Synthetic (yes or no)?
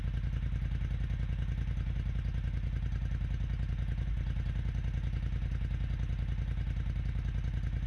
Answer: no